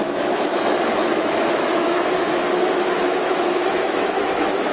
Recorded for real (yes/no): no